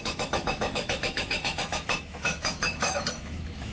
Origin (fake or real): fake